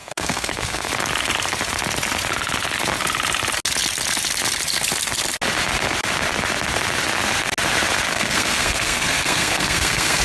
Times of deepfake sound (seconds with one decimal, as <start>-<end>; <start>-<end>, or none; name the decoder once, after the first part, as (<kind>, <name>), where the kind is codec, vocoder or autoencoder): 0.0-0.9 (codec, SNAC); 8.1-10.2